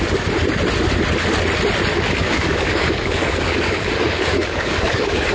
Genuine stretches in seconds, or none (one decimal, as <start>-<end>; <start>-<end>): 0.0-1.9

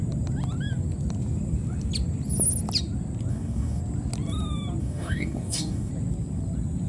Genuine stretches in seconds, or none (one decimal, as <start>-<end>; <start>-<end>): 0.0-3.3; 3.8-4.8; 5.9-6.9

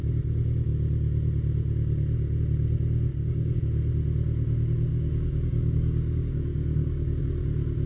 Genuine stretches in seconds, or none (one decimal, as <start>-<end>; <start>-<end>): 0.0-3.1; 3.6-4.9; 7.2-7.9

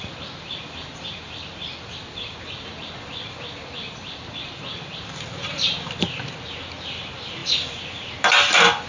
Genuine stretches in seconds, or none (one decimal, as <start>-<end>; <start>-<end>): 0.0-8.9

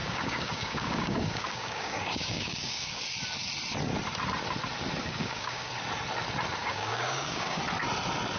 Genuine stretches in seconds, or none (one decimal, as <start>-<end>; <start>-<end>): 3.0-5.0; 5.7-6.6; 7.6-8.4